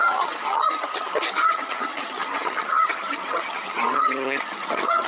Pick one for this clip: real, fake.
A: fake